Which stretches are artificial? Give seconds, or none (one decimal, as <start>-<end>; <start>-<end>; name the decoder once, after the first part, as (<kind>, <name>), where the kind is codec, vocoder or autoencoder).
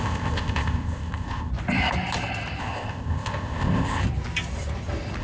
0.0-1.5 (codec, ZipCodec); 2.6-4.0